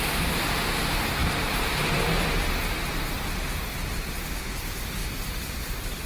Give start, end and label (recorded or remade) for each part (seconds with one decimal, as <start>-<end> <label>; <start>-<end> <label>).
0.0-1.2 recorded; 1.2-2.0 remade; 2.0-5.0 recorded; 5.0-6.1 remade